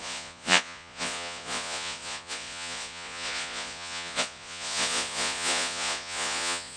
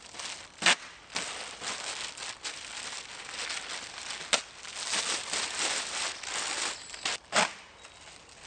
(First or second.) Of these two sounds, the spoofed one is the first